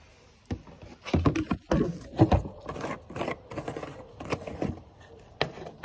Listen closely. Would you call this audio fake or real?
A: real